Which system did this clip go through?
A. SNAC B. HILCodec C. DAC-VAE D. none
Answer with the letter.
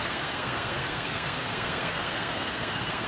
A